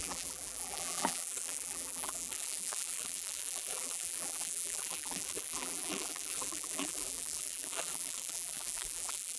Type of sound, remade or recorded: remade